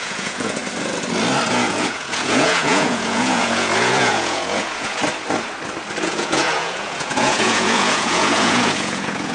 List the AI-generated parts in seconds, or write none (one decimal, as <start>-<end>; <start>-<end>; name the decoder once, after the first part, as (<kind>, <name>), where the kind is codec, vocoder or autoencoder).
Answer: 0.0-0.6 (vocoder, Vocos); 1.5-5.0; 6.0-9.3